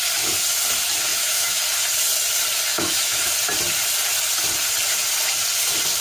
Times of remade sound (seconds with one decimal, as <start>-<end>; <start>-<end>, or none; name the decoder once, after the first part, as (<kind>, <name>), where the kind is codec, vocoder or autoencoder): 1.1-1.6 (autoencoder, DAC-VAE); 2.7-3.3